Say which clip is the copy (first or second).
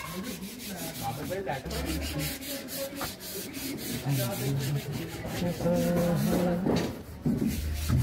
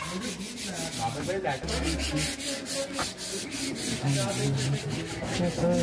first